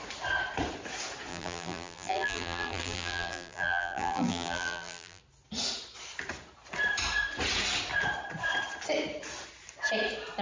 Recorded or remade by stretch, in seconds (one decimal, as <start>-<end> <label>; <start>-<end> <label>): 0.0-1.3 recorded; 1.3-5.2 remade; 5.2-10.4 recorded